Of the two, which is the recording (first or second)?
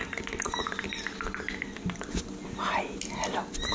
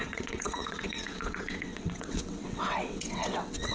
first